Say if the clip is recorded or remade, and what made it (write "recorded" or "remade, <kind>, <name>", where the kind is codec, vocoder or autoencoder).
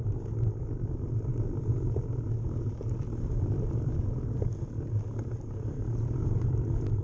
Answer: recorded